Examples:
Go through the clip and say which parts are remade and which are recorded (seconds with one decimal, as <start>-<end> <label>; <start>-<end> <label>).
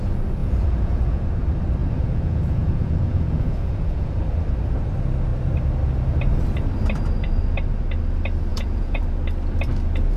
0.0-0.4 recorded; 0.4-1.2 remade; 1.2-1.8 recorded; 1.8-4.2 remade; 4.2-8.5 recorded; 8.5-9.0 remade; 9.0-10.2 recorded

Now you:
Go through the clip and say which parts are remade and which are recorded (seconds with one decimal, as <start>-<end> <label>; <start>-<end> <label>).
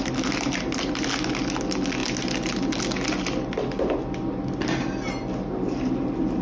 0.0-6.4 recorded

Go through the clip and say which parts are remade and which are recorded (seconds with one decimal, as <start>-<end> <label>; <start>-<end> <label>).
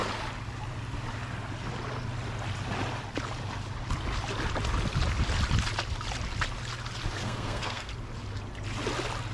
0.0-7.2 recorded; 7.2-7.9 remade; 7.9-9.3 recorded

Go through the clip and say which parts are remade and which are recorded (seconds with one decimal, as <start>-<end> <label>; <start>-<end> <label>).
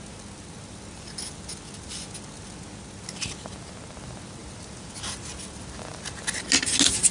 0.0-7.1 recorded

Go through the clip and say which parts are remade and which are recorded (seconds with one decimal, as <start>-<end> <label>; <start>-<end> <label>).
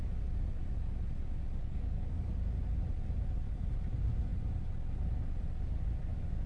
0.0-1.6 recorded; 1.6-2.3 remade; 2.3-6.5 recorded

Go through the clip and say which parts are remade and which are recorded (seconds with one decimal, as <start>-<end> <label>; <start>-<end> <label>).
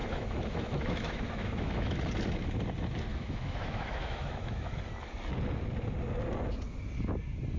0.0-2.0 remade; 2.0-3.1 recorded; 3.1-4.8 remade; 4.8-7.6 recorded